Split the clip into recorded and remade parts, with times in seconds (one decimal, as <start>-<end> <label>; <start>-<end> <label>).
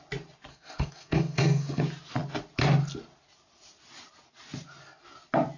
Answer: 0.0-0.5 recorded; 0.5-1.8 remade; 1.8-5.6 recorded